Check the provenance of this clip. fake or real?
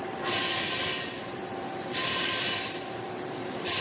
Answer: fake